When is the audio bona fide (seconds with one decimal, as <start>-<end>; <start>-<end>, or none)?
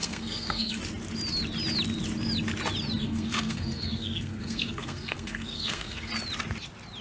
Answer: 0.8-3.0; 6.1-7.0